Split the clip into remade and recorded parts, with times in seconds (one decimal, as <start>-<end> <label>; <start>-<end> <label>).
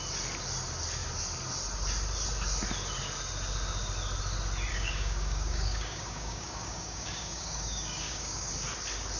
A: 0.0-4.7 recorded; 4.7-8.5 remade; 8.5-9.2 recorded